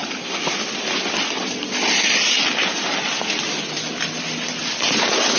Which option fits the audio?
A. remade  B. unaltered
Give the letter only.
B